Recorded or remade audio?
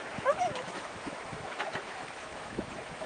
remade